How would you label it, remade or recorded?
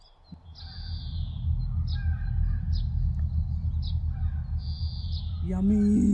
recorded